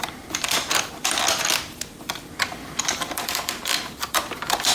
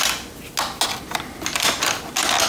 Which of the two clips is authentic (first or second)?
second